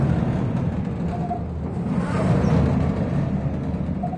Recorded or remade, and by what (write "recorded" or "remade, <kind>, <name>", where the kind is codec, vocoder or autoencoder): recorded